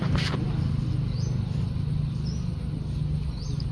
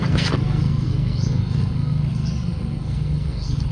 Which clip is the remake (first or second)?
second